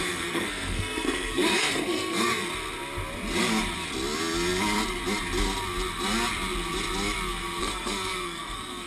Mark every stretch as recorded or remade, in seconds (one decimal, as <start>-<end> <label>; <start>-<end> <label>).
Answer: 0.0-2.5 remade; 2.5-7.6 recorded; 7.6-8.9 remade

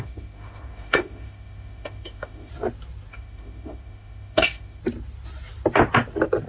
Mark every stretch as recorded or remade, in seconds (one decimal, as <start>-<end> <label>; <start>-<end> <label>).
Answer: 0.0-2.5 remade; 2.5-3.1 recorded; 3.1-4.8 remade; 4.8-6.5 recorded

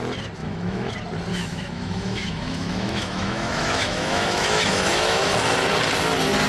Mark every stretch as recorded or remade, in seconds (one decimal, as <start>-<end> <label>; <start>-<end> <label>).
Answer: 0.0-0.4 recorded; 0.4-0.9 remade; 0.9-1.3 recorded; 1.3-5.2 remade; 5.2-6.5 recorded

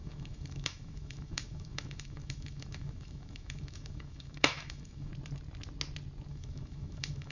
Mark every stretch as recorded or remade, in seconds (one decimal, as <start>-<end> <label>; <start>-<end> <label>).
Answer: 0.0-5.1 remade; 5.1-6.3 recorded; 6.3-7.3 remade

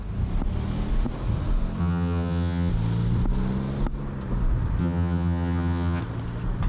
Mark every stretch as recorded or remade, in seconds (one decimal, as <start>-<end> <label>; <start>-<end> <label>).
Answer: 0.0-1.8 recorded; 1.8-2.7 remade; 2.7-4.8 recorded; 4.8-6.0 remade; 6.0-6.7 recorded

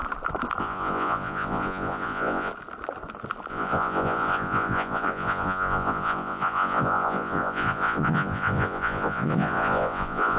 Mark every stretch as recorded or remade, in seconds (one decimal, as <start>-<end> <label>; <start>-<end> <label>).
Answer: 0.0-0.6 recorded; 0.6-2.5 remade; 2.5-3.5 recorded; 3.5-10.4 remade

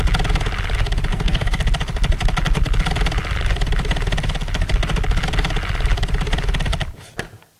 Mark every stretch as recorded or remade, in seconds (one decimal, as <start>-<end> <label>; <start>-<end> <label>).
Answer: 0.0-1.1 recorded; 1.1-1.6 remade; 1.6-7.6 recorded

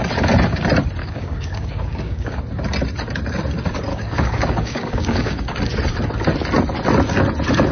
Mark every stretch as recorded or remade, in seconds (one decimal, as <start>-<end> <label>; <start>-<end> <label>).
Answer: 0.0-1.0 recorded; 1.0-2.4 remade; 2.4-3.9 recorded; 3.9-5.6 remade; 5.6-7.7 recorded